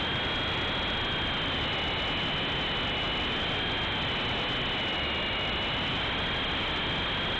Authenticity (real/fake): real